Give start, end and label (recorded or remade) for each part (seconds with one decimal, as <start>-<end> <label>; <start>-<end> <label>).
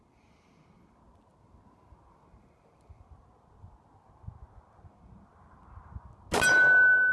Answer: 0.0-7.1 recorded